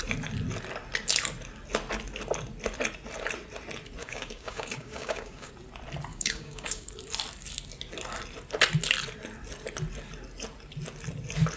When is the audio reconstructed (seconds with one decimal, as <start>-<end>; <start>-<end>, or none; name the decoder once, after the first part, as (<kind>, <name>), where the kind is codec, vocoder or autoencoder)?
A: 4.0-5.5 (codec, DAC); 6.1-6.9